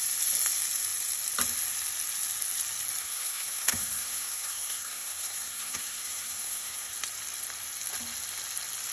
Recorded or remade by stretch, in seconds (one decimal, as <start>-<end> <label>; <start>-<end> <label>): 0.0-3.0 recorded; 3.0-6.9 remade; 6.9-8.9 recorded